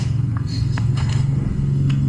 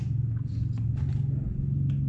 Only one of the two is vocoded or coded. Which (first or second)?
first